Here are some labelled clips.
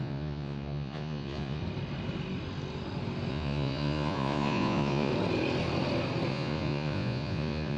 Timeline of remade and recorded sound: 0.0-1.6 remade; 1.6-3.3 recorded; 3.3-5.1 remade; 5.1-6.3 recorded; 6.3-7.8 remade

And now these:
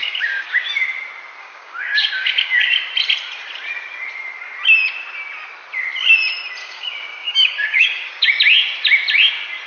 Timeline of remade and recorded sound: 0.0-0.6 remade; 0.6-1.4 recorded; 1.4-2.9 remade; 2.9-6.6 recorded; 6.6-8.3 remade; 8.3-9.7 recorded